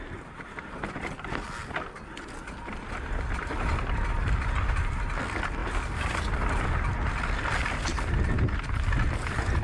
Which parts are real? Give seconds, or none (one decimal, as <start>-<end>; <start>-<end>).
0.0-9.6